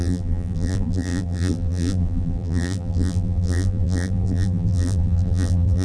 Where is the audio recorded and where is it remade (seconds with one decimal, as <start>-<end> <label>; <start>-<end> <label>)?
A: 0.0-5.8 remade